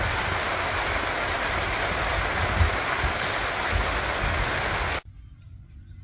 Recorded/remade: recorded